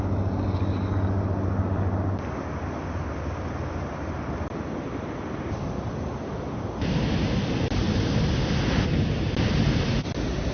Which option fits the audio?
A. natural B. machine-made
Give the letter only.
A